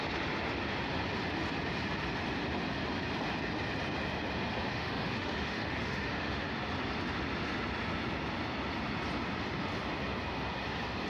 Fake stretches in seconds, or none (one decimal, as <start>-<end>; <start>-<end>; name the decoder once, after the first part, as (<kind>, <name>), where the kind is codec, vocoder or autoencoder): 4.7-6.4 (autoencoder, DAC-VAE)